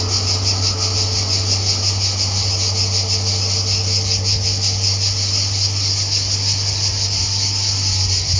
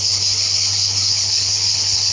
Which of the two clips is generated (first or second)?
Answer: second